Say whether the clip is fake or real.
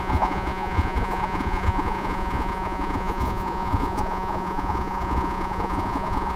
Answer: fake